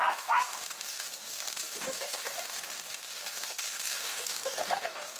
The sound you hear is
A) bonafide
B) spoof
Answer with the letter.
B